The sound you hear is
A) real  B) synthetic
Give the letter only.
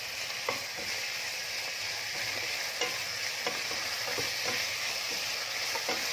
A